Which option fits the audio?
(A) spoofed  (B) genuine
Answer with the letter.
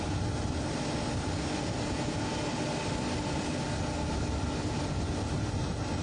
B